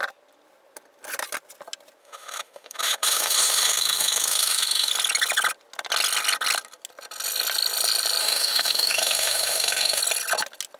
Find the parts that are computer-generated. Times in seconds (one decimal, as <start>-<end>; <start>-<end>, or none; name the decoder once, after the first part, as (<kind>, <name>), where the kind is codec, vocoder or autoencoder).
2.0-4.9 (autoencoder, DAC-VAE); 8.2-10.0